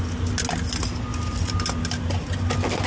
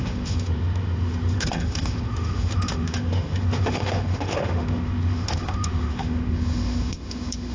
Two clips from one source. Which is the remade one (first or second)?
second